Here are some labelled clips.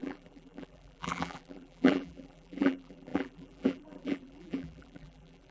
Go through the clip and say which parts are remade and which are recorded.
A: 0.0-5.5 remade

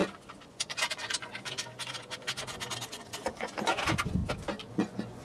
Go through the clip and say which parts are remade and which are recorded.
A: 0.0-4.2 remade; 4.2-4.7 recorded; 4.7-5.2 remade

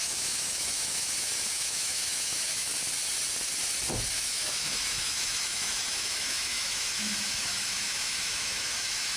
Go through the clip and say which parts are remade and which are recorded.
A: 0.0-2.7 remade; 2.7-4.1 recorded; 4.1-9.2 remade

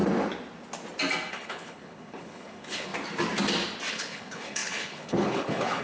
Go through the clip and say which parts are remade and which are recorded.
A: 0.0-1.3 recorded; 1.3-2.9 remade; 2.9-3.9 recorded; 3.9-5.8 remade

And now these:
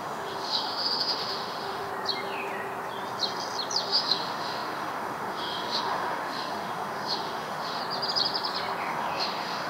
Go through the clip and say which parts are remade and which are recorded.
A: 0.0-1.9 remade; 1.9-3.8 recorded; 3.8-7.8 remade; 7.8-8.8 recorded; 8.8-9.7 remade

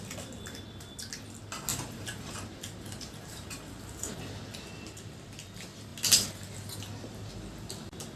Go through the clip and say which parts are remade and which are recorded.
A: 0.0-1.7 recorded; 1.7-4.4 remade; 4.4-8.2 recorded

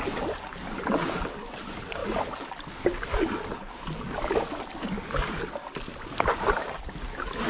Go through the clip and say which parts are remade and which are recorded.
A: 0.0-7.5 recorded